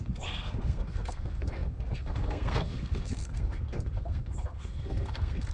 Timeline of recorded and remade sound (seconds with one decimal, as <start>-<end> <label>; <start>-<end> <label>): 0.0-5.5 remade